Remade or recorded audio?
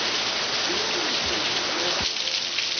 recorded